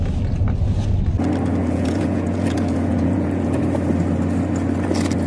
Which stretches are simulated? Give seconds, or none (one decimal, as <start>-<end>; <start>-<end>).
1.6-3.6